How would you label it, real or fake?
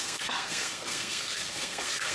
fake